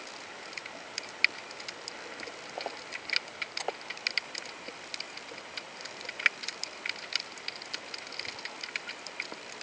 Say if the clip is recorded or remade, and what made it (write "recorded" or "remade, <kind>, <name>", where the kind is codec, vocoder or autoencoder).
recorded